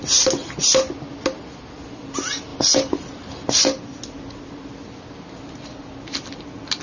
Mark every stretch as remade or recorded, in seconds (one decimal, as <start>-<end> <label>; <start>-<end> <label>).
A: 0.0-6.8 recorded